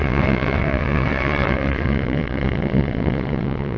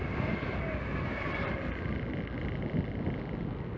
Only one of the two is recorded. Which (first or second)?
second